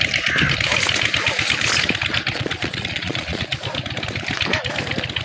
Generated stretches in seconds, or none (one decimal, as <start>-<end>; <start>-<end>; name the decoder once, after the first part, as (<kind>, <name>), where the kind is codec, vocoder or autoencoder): 2.3-3.5 (vocoder, Vocos)